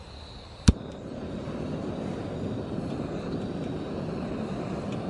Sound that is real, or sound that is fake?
real